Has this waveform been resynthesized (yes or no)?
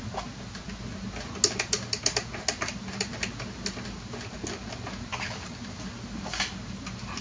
no